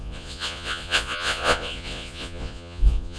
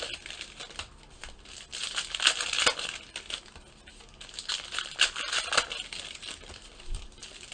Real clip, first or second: second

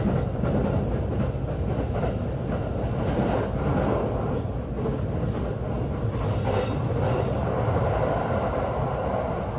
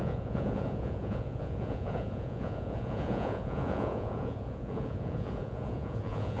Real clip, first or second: first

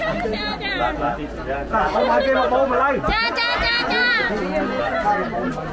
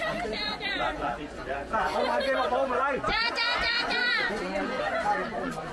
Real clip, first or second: first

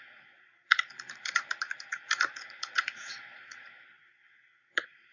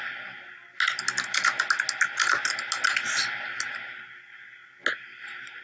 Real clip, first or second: second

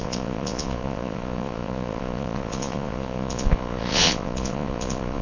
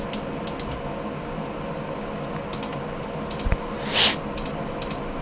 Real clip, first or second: second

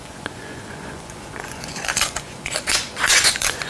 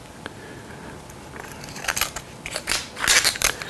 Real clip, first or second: second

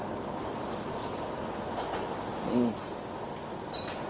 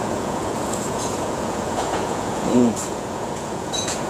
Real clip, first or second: first